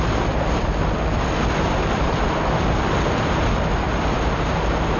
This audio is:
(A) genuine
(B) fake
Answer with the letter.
A